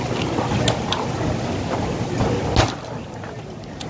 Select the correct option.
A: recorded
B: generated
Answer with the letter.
A